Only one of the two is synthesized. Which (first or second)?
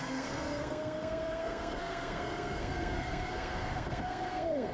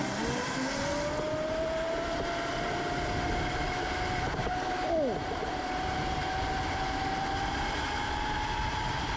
first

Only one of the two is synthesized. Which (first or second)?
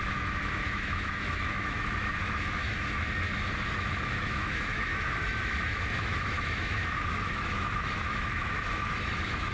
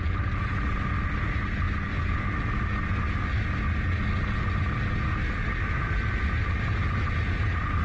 first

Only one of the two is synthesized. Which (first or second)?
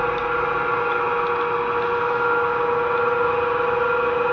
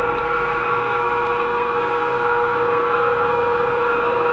second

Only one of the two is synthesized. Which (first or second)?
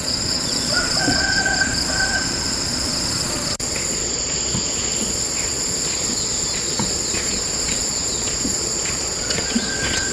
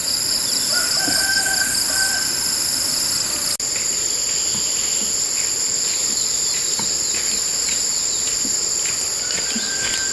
first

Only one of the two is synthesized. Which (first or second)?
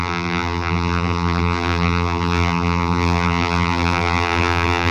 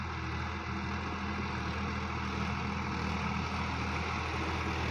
first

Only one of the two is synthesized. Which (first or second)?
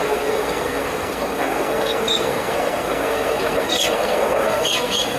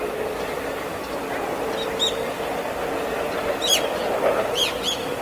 first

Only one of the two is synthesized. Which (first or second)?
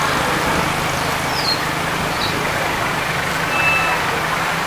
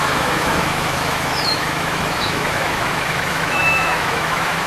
second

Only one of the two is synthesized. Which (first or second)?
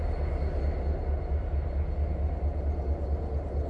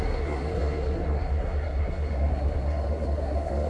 second